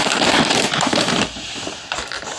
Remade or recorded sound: remade